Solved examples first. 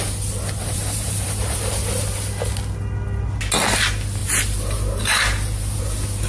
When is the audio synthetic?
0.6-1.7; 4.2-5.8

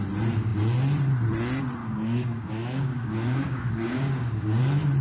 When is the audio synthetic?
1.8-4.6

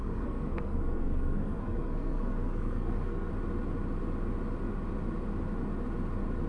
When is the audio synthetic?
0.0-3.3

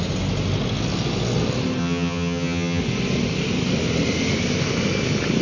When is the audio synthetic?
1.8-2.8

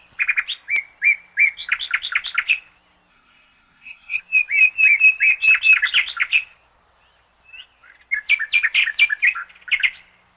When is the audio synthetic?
3.1-4.2